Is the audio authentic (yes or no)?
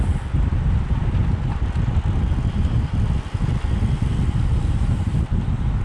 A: yes